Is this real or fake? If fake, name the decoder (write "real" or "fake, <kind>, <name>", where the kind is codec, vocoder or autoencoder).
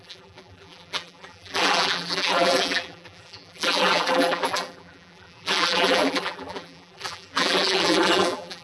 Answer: fake, vocoder, BigVGAN v2